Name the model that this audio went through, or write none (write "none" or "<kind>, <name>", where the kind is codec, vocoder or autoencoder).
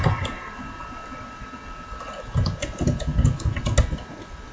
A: none